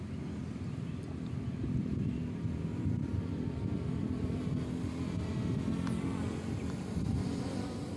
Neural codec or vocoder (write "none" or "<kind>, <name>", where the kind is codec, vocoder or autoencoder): none